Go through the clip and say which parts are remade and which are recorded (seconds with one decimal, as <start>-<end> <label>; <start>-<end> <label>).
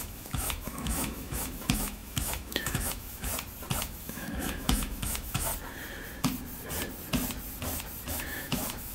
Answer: 0.0-3.3 remade; 3.3-3.8 recorded; 3.8-5.5 remade; 5.5-8.1 recorded; 8.1-8.9 remade